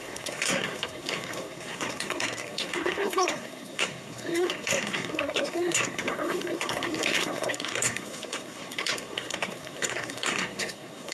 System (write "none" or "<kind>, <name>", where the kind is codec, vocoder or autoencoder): codec, SNAC